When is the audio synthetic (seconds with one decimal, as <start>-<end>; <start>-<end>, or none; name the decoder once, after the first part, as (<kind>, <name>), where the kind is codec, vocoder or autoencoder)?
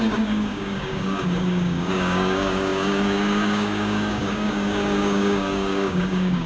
0.0-6.5 (codec, DAC)